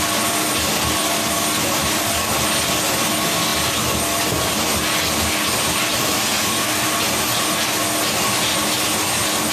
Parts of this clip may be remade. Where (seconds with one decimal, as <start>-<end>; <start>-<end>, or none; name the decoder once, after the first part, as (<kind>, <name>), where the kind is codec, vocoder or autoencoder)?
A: none

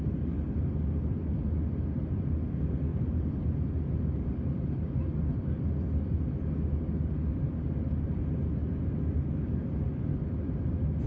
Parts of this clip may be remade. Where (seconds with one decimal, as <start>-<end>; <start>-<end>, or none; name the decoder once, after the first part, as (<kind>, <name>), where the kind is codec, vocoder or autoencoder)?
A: 2.9-4.9 (vocoder, BigVGAN v2)

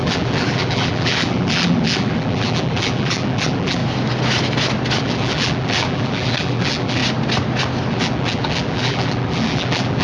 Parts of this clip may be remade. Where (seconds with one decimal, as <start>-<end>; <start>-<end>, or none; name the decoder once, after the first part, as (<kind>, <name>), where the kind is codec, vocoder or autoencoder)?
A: 0.0-3.8 (vocoder, BigVGAN v2); 5.0-7.0; 7.9-10.0

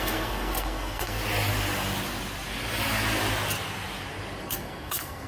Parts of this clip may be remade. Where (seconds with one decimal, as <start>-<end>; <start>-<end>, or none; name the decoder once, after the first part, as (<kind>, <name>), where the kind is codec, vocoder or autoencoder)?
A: 0.0-1.2 (codec, SNAC); 4.4-5.3

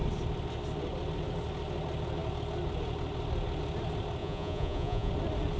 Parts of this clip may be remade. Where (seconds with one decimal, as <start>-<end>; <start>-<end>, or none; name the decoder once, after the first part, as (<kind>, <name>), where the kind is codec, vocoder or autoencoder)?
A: 4.2-5.1 (vocoder, Vocos)

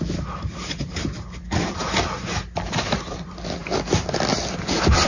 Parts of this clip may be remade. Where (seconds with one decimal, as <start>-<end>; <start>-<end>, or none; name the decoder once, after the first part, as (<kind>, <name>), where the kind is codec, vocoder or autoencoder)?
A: none